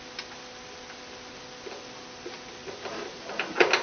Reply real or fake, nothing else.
real